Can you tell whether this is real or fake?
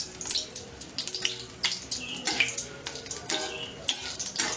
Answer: real